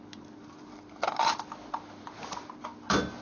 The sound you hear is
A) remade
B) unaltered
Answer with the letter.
B